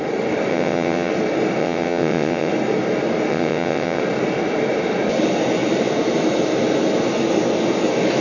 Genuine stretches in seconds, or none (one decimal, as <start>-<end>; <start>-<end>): 0.0-0.5; 1.1-1.6; 2.5-3.3; 4.0-8.2